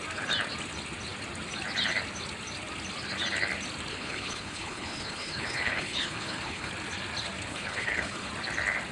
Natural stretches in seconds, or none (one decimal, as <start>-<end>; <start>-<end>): 0.0-3.9; 6.7-7.5; 8.3-8.9